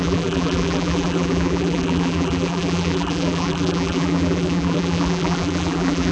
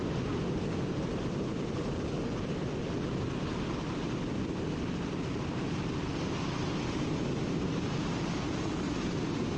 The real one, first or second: second